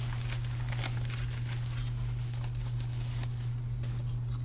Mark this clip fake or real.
real